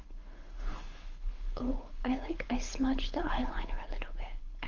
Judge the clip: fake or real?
fake